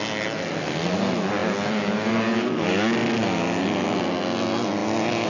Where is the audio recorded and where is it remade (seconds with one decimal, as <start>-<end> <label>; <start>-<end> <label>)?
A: 0.0-5.3 recorded